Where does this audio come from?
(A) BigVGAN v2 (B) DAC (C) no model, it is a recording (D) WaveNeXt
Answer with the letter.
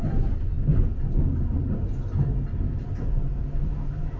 C